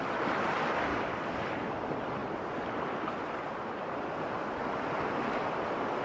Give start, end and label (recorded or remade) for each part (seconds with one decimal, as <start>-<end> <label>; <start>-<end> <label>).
0.0-0.9 recorded; 0.9-1.4 remade; 1.4-6.0 recorded